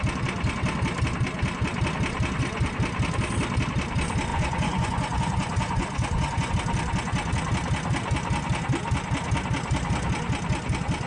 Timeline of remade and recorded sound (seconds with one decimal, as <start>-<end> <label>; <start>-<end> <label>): 0.0-4.3 recorded; 4.3-6.5 remade; 6.5-11.1 recorded